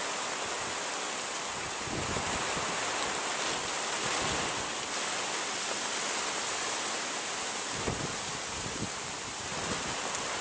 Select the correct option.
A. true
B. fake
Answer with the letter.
A